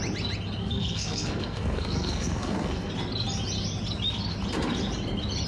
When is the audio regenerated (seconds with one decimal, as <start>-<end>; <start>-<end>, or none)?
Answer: 0.6-2.9

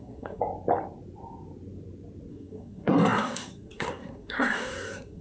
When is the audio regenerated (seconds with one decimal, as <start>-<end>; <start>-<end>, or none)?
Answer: 0.0-0.4; 2.3-5.2

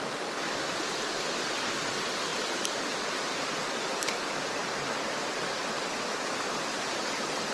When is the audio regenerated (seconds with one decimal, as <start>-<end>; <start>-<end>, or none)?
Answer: none

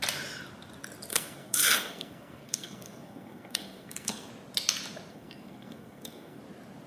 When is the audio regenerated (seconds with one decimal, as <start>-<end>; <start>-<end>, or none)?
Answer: 1.1-4.3; 5.1-6.4

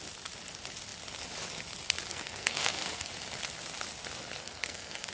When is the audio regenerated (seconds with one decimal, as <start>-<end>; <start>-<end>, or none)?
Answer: 2.1-3.1; 4.4-5.1

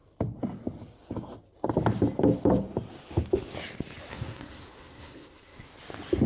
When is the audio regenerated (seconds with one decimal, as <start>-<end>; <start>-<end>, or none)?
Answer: 4.1-5.7

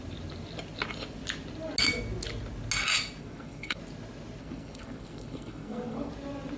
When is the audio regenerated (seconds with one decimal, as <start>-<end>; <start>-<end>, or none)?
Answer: 3.2-3.8; 4.4-6.1

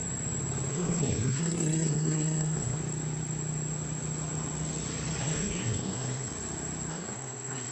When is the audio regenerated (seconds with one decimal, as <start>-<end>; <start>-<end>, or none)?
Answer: 0.7-2.8; 5.2-6.3; 6.9-7.7